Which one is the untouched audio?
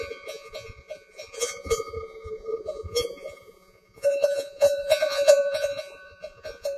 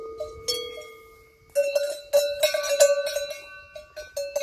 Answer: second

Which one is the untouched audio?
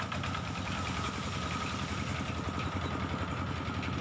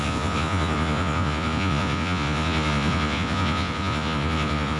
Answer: first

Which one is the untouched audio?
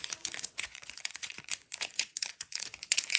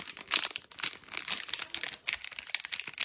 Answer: second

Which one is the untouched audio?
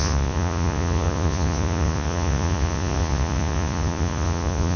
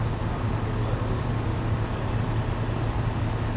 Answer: second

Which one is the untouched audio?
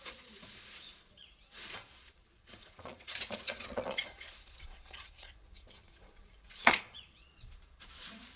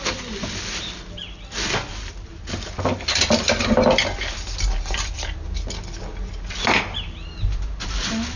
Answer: second